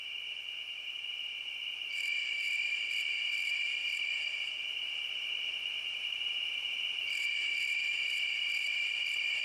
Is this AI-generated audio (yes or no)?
yes